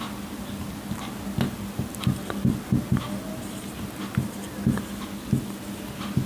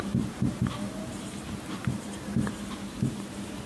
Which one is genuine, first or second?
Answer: first